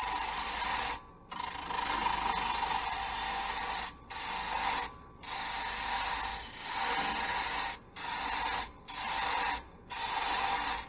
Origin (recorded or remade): recorded